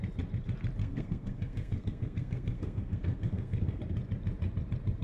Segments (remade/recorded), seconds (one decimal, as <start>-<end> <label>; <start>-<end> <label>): 0.0-0.8 recorded; 0.8-3.8 remade; 3.8-5.0 recorded